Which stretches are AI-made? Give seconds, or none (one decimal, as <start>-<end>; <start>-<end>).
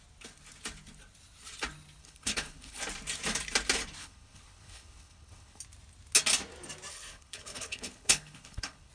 2.0-2.8; 4.0-5.6; 6.9-8.9